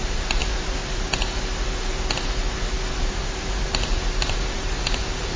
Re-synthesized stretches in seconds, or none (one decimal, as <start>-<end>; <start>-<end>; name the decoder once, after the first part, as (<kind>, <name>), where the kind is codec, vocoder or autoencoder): 0.0-0.4 (vocoder, BigVGAN v2); 3.0-5.4